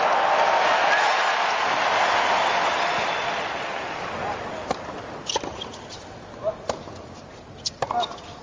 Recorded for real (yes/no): yes